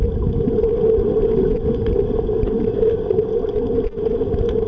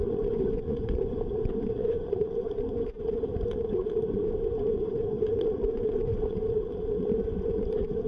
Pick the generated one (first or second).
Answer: second